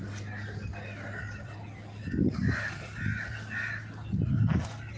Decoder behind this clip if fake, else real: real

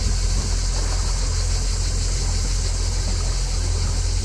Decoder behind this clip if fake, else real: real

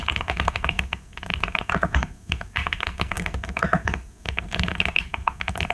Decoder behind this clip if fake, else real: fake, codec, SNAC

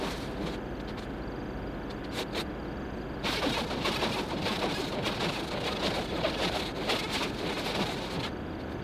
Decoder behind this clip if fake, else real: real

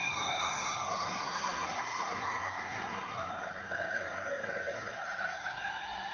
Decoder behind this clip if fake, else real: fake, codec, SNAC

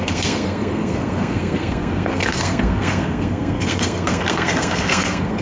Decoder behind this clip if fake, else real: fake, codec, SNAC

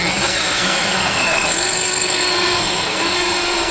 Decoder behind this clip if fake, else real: fake, codec, SNAC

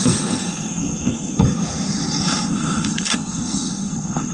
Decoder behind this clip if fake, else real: fake, codec, SNAC